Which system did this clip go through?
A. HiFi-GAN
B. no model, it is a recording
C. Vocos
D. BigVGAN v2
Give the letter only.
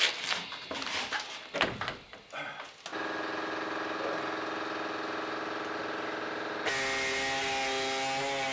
B